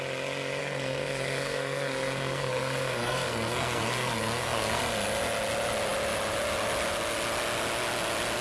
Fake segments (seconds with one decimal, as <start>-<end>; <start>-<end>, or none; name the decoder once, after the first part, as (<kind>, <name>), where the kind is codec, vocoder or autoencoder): 0.6-4.8 (codec, SNAC)